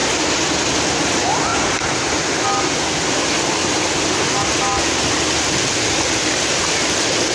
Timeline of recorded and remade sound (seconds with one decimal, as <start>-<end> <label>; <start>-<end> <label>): 0.0-7.3 recorded